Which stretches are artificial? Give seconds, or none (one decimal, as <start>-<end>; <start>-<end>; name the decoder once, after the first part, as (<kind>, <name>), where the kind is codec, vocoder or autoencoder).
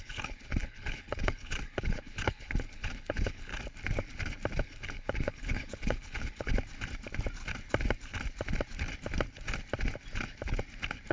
0.0-3.5 (codec, HILCodec); 4.6-6.5